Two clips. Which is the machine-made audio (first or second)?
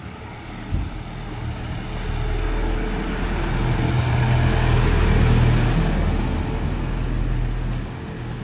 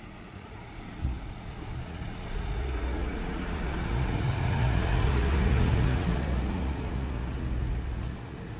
second